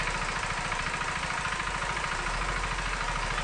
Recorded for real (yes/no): yes